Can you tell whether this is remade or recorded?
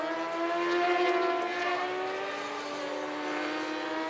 recorded